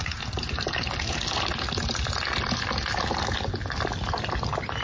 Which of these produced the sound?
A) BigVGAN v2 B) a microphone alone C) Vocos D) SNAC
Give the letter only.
B